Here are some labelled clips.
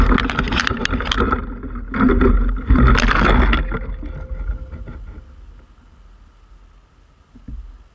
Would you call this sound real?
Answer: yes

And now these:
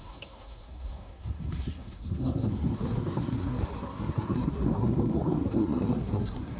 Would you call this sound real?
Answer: no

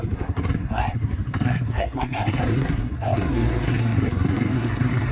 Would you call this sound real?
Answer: no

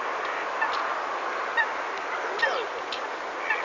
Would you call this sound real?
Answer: yes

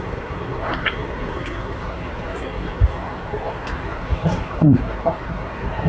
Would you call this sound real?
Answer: no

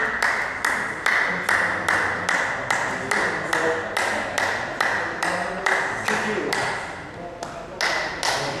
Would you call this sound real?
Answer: yes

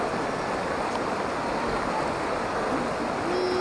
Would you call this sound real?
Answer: yes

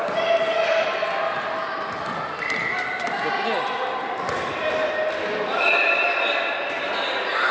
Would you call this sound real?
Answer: yes